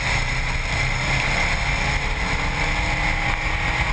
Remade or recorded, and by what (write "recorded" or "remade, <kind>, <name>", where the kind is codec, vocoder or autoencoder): recorded